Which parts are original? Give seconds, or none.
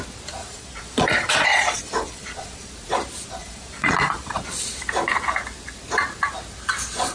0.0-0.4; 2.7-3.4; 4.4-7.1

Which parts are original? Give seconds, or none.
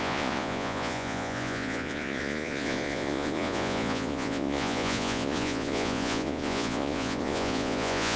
none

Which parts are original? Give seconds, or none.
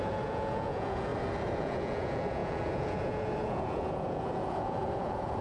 1.1-1.6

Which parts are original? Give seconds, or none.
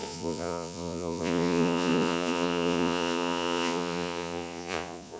none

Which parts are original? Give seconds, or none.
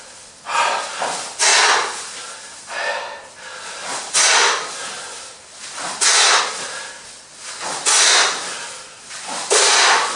0.0-10.2